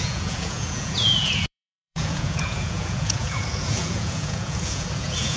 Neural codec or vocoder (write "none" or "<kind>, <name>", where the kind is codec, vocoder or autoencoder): vocoder, Vocos